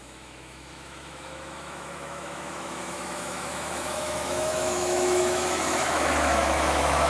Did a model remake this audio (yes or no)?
yes